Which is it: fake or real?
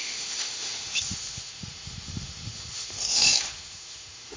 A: fake